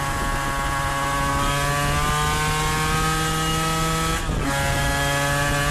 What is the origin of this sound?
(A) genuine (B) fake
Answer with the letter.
A